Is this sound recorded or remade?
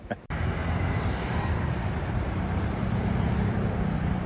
recorded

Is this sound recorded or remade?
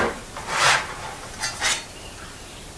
recorded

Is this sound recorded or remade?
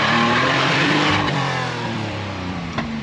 remade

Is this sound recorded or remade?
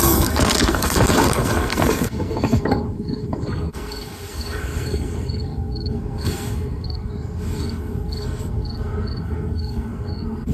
remade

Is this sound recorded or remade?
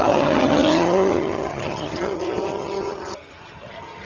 remade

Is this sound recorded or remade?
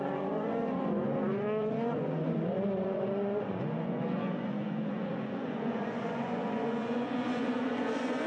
remade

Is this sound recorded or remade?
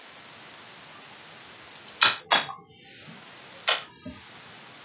recorded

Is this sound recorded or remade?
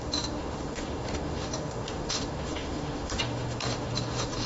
remade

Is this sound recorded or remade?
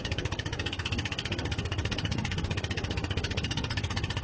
remade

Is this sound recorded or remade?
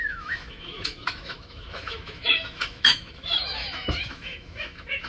remade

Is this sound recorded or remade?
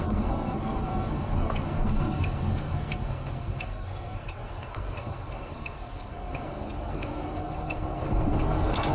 remade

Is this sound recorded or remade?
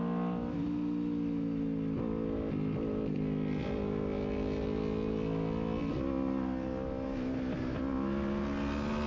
recorded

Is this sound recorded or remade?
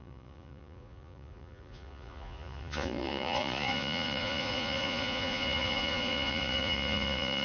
remade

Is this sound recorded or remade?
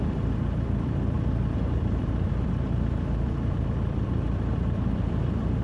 remade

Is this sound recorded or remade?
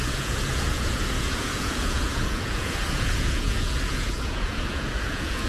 remade